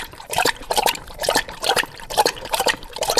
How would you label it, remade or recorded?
remade